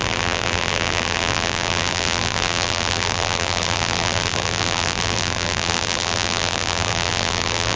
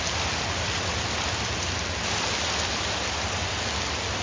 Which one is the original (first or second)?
second